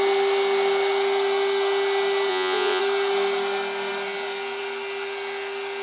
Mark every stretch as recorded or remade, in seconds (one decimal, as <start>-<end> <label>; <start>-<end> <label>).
0.0-2.3 recorded; 2.3-2.8 remade; 2.8-5.8 recorded

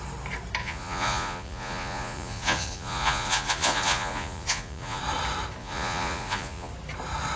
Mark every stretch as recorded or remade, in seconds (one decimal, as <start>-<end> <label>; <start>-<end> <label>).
0.0-0.6 recorded; 0.6-5.0 remade; 5.0-5.6 recorded; 5.6-6.7 remade; 6.7-7.4 recorded